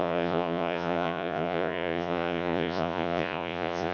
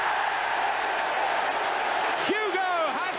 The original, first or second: second